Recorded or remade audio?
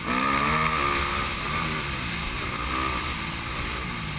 recorded